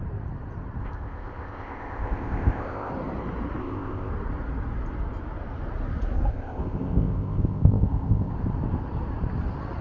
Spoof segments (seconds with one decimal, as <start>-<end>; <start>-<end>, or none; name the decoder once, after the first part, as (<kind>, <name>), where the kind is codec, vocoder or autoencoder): 0.8-2.9 (codec, ZipCodec); 3.6-4.1; 6.3-8.3